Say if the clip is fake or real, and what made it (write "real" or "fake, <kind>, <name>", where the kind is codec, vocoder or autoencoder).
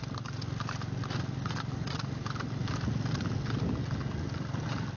real